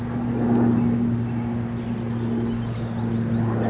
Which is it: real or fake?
real